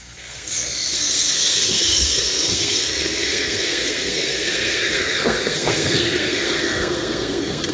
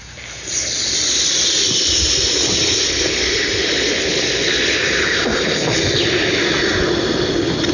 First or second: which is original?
second